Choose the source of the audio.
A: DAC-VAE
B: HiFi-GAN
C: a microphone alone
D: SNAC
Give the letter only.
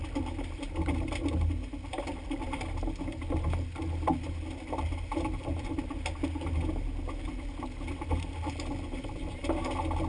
C